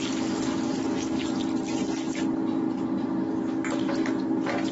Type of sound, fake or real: real